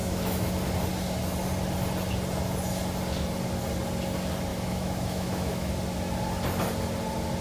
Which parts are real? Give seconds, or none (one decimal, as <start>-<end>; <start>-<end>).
0.5-4.5; 5.7-7.4